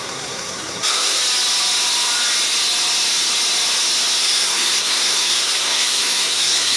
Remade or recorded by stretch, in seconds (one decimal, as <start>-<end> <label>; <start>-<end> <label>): 0.0-1.2 remade; 1.2-4.2 recorded; 4.2-6.8 remade

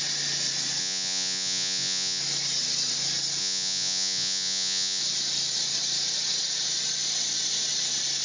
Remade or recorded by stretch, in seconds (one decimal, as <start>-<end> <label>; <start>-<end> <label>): 0.0-0.8 recorded; 0.8-2.2 remade; 2.2-3.4 recorded; 3.4-5.0 remade; 5.0-8.2 recorded